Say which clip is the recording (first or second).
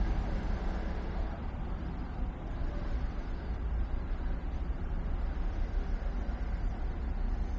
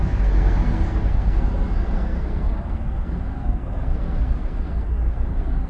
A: first